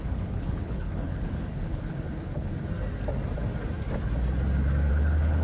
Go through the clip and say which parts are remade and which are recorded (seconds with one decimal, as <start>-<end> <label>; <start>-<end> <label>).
0.0-2.5 remade; 2.5-4.9 recorded; 4.9-5.4 remade